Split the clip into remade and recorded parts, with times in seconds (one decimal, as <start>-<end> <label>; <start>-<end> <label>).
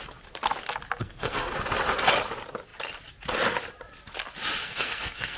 0.0-1.0 recorded; 1.0-1.5 remade; 1.5-4.6 recorded; 4.6-5.4 remade